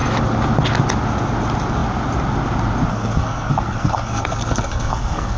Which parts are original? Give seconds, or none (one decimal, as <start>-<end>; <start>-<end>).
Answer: 0.0-2.9